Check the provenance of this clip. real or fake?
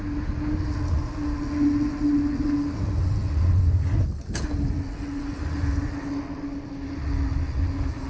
real